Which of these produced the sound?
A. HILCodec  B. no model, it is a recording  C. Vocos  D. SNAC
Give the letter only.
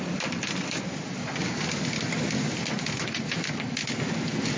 B